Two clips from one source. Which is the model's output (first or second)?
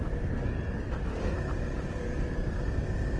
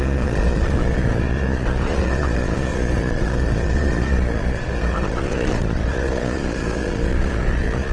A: second